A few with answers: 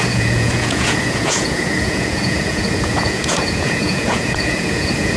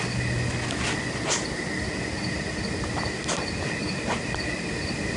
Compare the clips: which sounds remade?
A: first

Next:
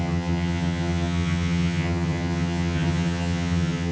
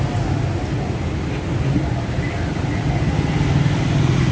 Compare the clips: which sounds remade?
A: first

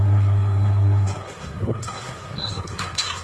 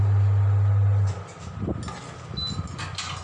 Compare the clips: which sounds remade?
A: first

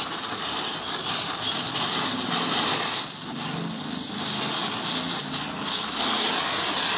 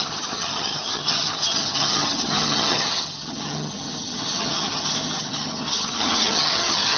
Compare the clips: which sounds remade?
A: second